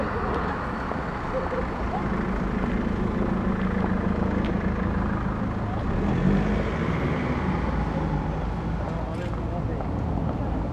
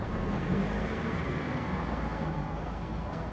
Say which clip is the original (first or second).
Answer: first